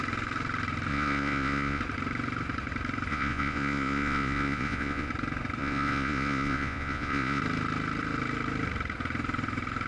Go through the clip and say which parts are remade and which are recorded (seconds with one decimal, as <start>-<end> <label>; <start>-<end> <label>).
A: 0.0-0.9 recorded; 0.9-1.8 remade; 1.8-3.1 recorded; 3.1-5.1 remade; 5.1-5.6 recorded; 5.6-7.4 remade; 7.4-9.9 recorded

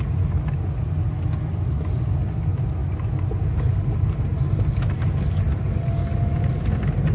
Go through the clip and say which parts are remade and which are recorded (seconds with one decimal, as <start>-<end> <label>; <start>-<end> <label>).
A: 0.0-7.1 recorded

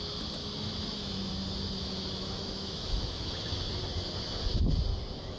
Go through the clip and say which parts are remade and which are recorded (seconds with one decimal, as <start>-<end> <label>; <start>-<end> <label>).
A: 0.0-0.4 recorded; 0.4-1.3 remade; 1.3-1.8 recorded; 1.8-3.7 remade; 3.7-5.4 recorded